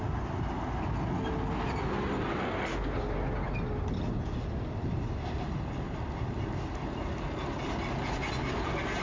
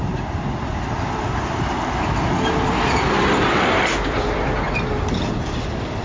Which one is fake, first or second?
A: second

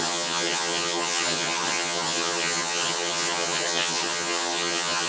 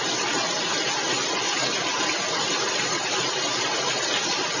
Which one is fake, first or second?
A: first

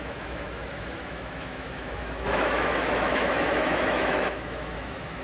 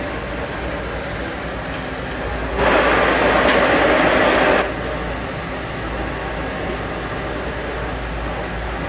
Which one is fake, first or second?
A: first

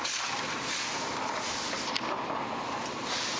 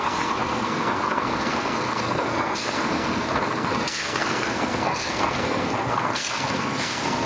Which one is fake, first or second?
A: second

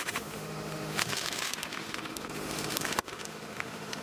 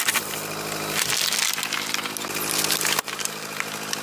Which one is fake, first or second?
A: first